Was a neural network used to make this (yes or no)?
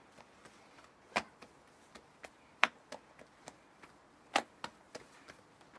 no